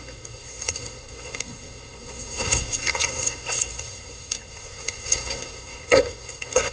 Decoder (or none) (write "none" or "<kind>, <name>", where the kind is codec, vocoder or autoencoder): codec, SNAC